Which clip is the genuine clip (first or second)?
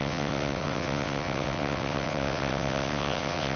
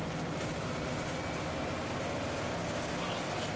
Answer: second